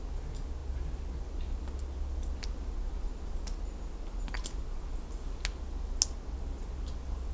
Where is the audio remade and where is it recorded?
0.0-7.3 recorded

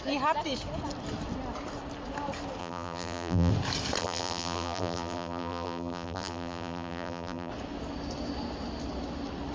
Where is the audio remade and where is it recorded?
0.0-2.6 recorded; 2.6-3.5 remade; 3.5-4.0 recorded; 4.0-7.5 remade; 7.5-9.5 recorded